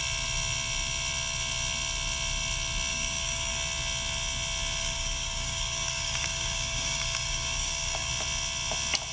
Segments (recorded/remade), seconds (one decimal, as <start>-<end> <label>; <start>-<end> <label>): 0.0-2.9 recorded; 2.9-3.5 remade; 3.5-4.8 recorded; 4.8-8.1 remade; 8.1-9.1 recorded